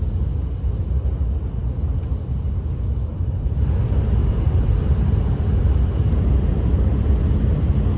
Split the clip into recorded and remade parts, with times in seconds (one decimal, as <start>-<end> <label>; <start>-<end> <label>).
0.0-3.1 recorded; 3.1-3.6 remade; 3.6-4.2 recorded; 4.2-4.7 remade; 4.7-5.9 recorded; 5.9-7.1 remade; 7.1-8.0 recorded